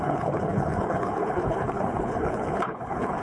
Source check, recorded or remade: remade